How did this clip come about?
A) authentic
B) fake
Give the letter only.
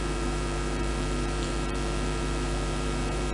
B